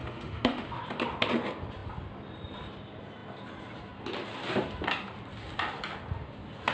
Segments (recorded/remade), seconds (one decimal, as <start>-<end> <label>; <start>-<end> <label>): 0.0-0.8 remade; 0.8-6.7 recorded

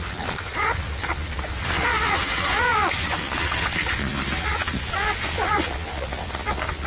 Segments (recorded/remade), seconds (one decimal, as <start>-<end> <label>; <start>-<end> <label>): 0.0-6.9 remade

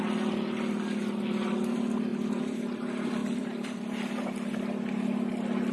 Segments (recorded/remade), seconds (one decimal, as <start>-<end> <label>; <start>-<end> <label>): 0.0-2.1 recorded; 2.1-2.7 remade; 2.7-3.2 recorded; 3.2-4.1 remade; 4.1-5.7 recorded

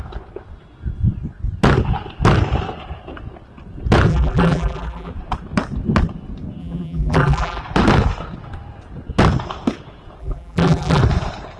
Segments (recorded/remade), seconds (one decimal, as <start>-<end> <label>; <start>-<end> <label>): 0.0-4.1 recorded; 4.1-5.1 remade; 5.1-6.6 recorded; 6.6-7.6 remade; 7.6-10.2 recorded; 10.2-11.0 remade; 11.0-11.6 recorded

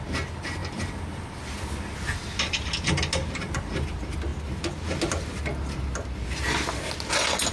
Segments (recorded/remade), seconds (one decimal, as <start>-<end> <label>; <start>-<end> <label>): 0.0-7.5 recorded

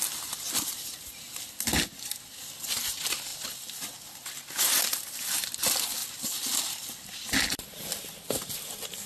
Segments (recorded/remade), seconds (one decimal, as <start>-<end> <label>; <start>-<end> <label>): 0.0-9.1 recorded

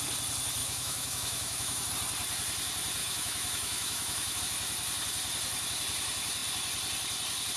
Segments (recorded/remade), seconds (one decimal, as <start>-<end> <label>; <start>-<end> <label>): 0.0-0.6 recorded; 0.6-1.9 remade; 1.9-3.0 recorded; 3.0-4.4 remade; 4.4-7.6 recorded